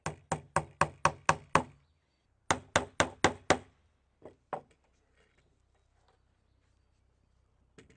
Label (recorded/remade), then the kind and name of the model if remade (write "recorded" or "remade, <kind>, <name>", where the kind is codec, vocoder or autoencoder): recorded